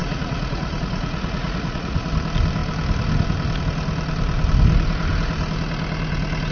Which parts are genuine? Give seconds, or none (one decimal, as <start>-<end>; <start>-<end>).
2.1-6.5